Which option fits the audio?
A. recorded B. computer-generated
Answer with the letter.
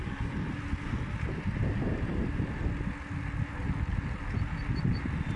A